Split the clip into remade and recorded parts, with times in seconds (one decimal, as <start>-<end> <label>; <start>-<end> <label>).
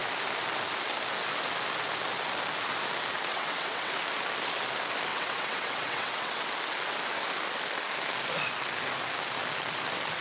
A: 0.0-3.3 recorded; 3.3-3.9 remade; 3.9-5.1 recorded; 5.1-6.5 remade; 6.5-10.2 recorded